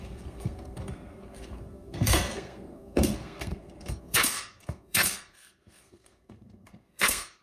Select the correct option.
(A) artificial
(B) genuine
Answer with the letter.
A